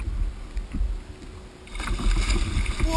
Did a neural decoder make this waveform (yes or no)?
no